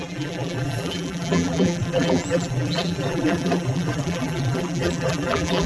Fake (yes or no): yes